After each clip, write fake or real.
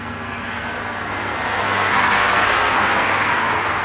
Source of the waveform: fake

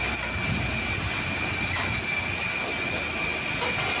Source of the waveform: real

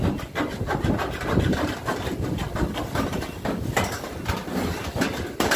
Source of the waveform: real